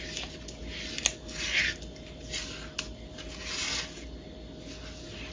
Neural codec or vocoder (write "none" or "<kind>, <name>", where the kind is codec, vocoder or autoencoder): none